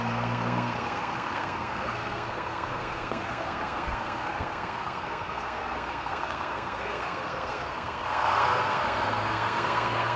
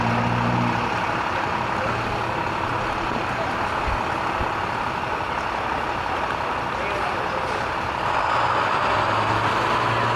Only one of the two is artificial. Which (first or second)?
first